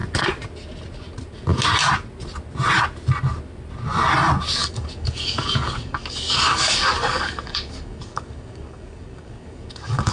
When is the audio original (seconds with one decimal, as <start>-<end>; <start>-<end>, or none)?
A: 0.0-4.6